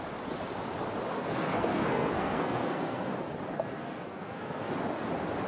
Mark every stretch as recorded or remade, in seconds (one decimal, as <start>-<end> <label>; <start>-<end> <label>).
0.0-1.1 recorded; 1.1-3.1 remade; 3.1-3.5 recorded; 3.5-4.7 remade; 4.7-5.5 recorded